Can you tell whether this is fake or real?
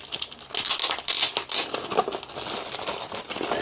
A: real